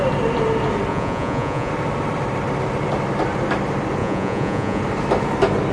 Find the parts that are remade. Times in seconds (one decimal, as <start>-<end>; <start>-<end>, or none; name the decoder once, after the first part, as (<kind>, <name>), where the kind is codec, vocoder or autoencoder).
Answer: 0.9-1.7 (vocoder, Vocos); 4.0-4.8